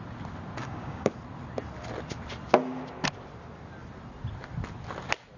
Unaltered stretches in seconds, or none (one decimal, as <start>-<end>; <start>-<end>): 0.0-0.6; 1.1-5.4